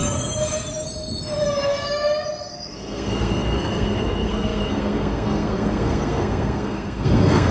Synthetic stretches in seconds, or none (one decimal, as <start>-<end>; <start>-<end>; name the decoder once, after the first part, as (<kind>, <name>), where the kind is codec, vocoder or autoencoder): 2.5-7.5 (codec, SNAC)